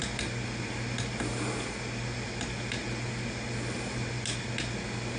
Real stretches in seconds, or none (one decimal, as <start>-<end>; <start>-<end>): 0.0-5.2